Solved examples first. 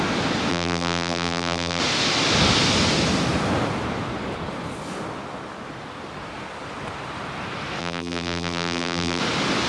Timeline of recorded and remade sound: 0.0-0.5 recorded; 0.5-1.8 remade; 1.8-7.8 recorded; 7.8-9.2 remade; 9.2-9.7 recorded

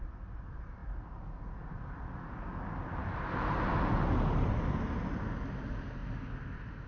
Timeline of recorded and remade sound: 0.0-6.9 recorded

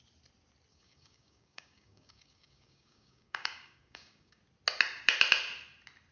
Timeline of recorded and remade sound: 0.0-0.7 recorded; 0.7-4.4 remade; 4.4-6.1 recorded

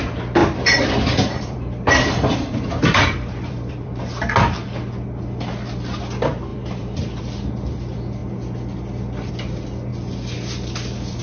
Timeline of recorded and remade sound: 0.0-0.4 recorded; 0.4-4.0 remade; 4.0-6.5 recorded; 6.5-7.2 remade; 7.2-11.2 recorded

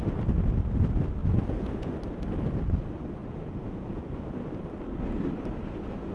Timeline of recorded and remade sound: 0.0-1.2 recorded; 1.2-1.9 remade; 1.9-3.2 recorded; 3.2-4.2 remade; 4.2-6.1 recorded

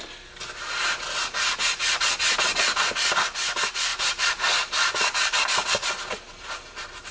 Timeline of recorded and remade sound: 0.0-3.9 recorded; 3.9-5.9 remade; 5.9-7.1 recorded